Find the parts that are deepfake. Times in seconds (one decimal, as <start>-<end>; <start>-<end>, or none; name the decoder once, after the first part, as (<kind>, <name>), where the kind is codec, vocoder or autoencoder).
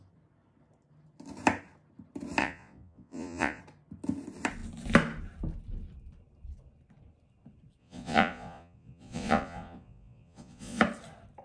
2.4-3.6 (vocoder, Vocos); 7.8-10.8